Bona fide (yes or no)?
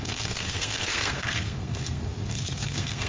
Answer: no